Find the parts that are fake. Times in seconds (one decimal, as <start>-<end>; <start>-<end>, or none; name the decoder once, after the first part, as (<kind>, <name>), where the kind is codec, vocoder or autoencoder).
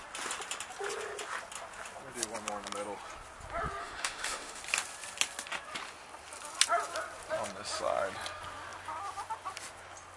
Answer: 3.8-4.6 (autoencoder, DAC-VAE)